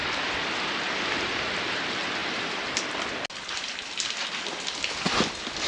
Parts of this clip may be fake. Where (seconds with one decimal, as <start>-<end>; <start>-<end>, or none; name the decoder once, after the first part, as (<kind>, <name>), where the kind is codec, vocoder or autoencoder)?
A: none

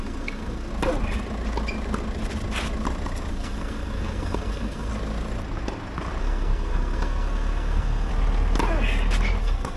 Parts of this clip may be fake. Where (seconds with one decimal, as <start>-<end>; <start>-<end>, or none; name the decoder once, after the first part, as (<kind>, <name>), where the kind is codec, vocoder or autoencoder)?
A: 0.0-0.7 (codec, SNAC); 3.3-4.9; 6.2-8.1; 9.4-9.8